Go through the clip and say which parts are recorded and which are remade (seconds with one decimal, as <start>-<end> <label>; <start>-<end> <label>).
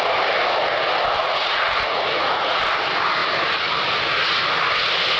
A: 0.0-1.2 recorded; 1.2-2.6 remade; 2.6-5.2 recorded